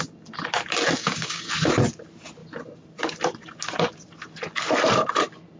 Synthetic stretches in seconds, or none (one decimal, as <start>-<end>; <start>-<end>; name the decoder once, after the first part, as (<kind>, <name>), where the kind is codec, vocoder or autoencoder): 1.0-1.5 (codec, DAC)